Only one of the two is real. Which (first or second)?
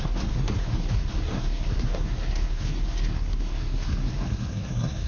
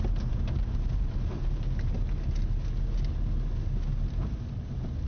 second